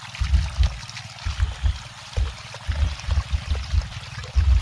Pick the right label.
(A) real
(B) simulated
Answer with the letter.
A